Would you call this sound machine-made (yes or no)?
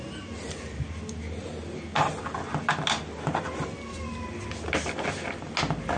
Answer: no